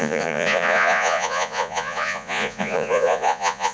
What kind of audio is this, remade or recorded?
remade